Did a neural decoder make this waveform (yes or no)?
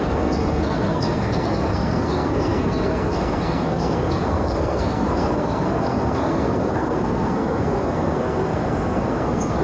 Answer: yes